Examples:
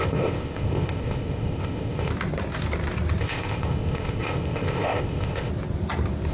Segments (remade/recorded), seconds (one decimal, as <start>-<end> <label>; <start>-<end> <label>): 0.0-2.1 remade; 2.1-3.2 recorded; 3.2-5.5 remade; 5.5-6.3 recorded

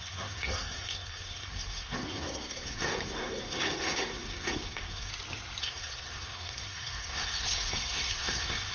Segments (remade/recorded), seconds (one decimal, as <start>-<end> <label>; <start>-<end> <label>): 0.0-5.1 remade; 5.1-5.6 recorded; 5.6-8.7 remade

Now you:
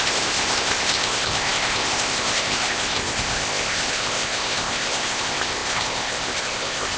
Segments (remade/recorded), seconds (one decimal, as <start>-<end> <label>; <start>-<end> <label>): 0.0-7.0 remade

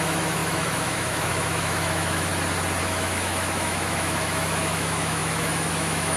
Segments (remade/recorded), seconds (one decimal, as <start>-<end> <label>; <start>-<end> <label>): 0.0-2.3 remade; 2.3-2.8 recorded; 2.8-6.2 remade

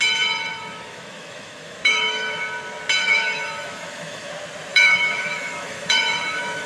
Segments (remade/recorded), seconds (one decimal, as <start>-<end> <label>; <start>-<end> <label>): 0.0-0.5 recorded; 0.5-2.4 remade; 2.4-3.0 recorded; 3.0-4.3 remade; 4.3-4.7 recorded; 4.7-6.7 remade